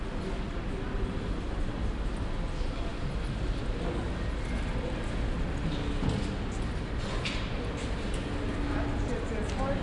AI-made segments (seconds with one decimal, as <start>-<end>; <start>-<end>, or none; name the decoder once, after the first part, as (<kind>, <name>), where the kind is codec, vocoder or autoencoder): none